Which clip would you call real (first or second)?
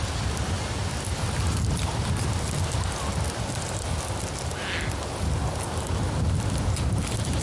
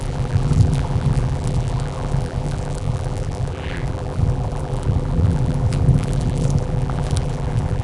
first